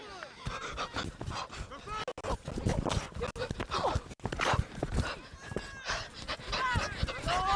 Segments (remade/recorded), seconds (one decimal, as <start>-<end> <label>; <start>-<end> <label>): 0.0-7.6 recorded